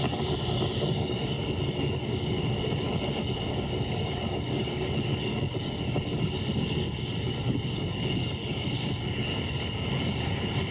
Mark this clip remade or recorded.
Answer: remade